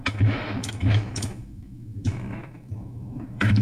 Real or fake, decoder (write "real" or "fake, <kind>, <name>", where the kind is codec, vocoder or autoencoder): fake, autoencoder, DAC-VAE